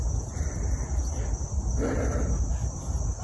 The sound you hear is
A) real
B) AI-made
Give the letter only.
A